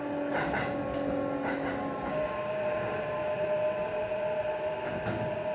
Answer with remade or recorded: recorded